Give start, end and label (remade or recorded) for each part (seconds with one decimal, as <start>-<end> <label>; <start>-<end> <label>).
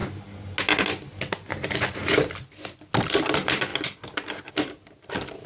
0.0-3.7 recorded; 3.7-4.5 remade; 4.5-5.5 recorded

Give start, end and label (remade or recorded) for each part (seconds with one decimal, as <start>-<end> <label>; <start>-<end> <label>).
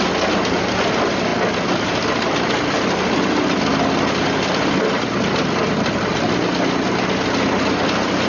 0.0-8.3 recorded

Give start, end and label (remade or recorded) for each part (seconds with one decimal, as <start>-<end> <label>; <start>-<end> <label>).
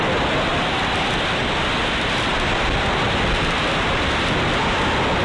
0.0-5.2 recorded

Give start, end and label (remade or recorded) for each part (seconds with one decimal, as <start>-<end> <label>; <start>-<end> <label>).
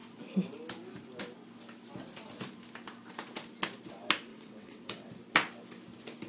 0.0-4.3 recorded; 4.3-5.1 remade; 5.1-6.3 recorded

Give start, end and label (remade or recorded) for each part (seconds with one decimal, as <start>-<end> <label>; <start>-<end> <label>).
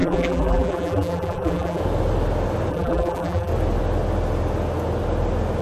0.0-1.8 remade; 1.8-2.7 recorded; 2.7-3.5 remade; 3.5-5.6 recorded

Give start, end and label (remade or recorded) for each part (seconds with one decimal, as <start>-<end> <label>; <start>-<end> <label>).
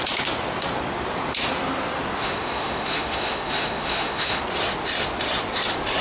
0.0-2.2 recorded; 2.2-4.4 remade; 4.4-6.0 recorded